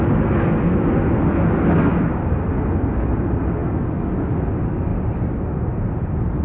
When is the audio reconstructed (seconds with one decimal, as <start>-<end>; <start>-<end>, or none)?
4.9-6.4